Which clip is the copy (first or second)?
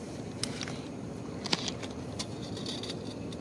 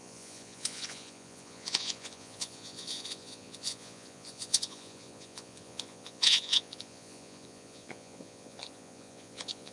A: second